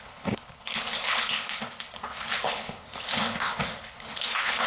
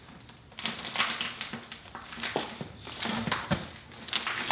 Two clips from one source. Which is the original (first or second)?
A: second